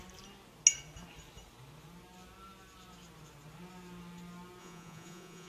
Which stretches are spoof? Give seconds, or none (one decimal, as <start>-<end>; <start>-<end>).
4.6-5.5

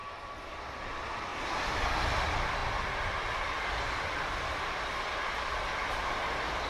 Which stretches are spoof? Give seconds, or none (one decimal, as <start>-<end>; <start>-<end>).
0.0-0.6

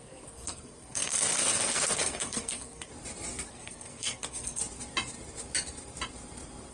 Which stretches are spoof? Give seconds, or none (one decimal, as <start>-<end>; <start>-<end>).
0.0-2.9; 3.5-4.6

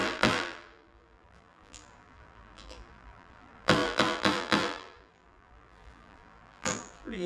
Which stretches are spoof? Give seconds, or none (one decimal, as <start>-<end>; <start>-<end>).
0.0-7.3

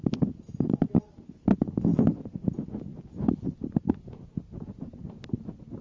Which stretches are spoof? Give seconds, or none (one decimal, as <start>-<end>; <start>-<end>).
none

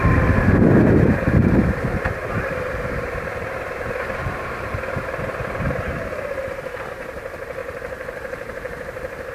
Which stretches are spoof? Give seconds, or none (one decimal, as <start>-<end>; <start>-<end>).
0.0-9.3

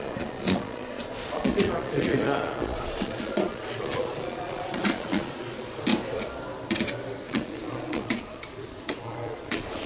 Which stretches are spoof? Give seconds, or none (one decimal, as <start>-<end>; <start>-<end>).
0.0-5.9; 7.3-9.9